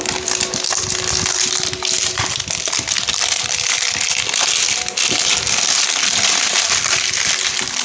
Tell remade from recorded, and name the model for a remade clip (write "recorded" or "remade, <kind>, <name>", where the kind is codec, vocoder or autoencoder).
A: recorded